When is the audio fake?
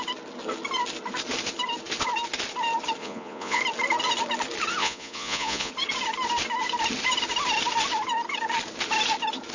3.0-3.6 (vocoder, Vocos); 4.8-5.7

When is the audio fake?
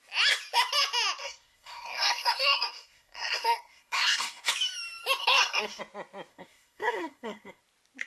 1.2-4.5 (codec, SNAC); 5.2-5.8; 6.3-7.6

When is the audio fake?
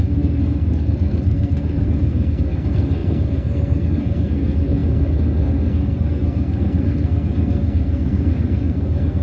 0.0-9.2 (codec, SNAC)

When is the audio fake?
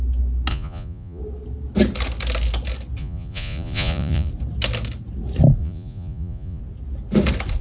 0.5-1.2 (vocoder, Vocos); 3.0-4.3; 5.6-6.6